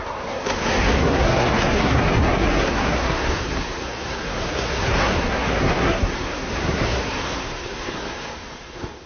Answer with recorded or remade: remade